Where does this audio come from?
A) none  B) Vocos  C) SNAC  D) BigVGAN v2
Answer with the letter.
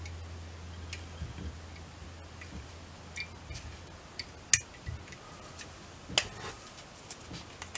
A